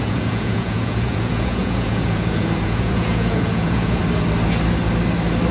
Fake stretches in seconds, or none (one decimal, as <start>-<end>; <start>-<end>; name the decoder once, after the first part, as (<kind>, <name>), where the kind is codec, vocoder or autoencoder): 0.0-4.0 (vocoder, Vocos)